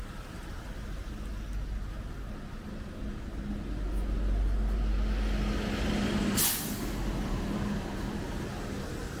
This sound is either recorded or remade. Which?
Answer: recorded